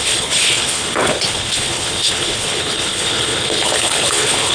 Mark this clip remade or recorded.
remade